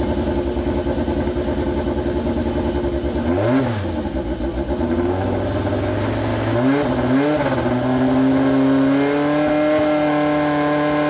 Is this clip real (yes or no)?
yes